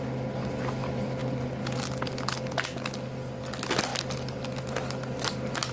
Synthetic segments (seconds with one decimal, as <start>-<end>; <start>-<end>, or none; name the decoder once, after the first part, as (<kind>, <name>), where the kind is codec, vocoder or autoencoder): none